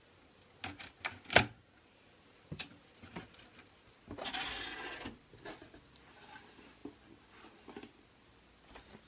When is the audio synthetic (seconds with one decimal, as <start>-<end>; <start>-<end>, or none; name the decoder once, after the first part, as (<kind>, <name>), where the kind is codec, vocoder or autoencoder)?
none